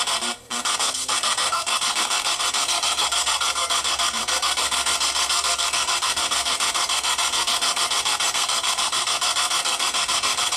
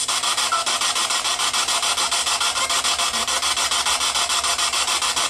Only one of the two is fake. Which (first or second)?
first